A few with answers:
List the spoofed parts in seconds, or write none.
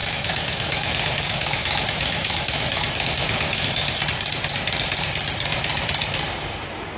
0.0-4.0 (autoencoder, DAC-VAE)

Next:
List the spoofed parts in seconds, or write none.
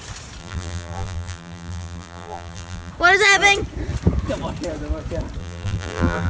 0.4-2.9 (vocoder, BigVGAN v2); 5.4-6.3